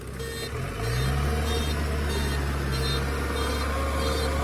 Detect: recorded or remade recorded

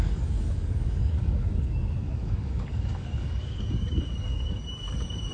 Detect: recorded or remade remade